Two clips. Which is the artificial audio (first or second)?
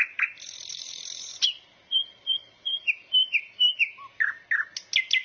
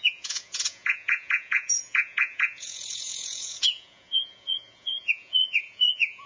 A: second